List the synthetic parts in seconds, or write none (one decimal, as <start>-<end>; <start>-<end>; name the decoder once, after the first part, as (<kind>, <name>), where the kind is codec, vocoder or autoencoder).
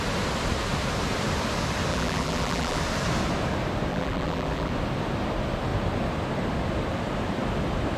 1.9-2.8 (vocoder, BigVGAN v2); 3.9-4.7